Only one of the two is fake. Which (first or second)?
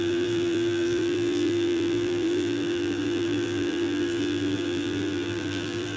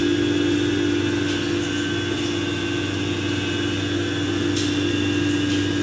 first